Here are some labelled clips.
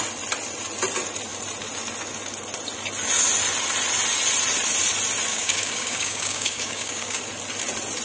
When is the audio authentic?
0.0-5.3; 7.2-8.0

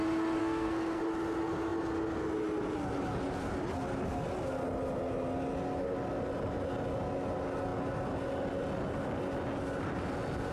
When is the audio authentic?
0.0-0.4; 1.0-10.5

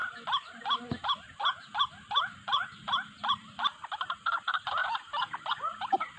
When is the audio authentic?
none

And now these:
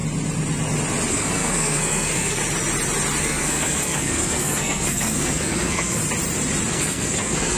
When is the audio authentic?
0.0-1.1; 2.4-3.2; 6.0-6.7

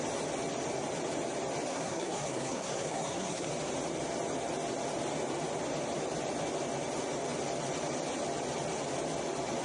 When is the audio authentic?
0.0-1.7; 3.5-9.6

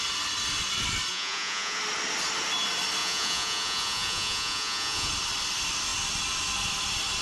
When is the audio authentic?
0.0-1.1; 1.8-3.0; 5.1-7.2

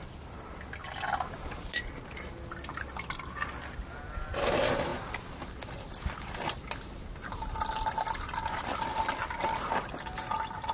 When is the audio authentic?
0.0-10.7